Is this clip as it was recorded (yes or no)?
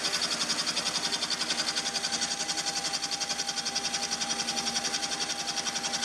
yes